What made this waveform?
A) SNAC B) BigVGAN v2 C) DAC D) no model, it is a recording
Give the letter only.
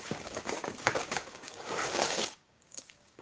C